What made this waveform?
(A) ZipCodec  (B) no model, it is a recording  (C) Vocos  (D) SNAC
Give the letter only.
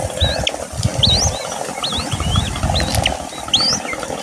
B